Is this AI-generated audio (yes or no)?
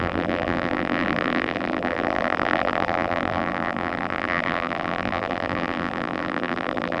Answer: yes